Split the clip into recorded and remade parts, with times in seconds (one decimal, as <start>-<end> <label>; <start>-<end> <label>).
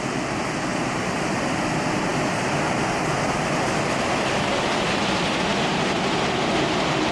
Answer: 0.0-5.5 recorded; 5.5-6.3 remade; 6.3-7.1 recorded